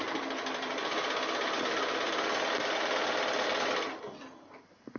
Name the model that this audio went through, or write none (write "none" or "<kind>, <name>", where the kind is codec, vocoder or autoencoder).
none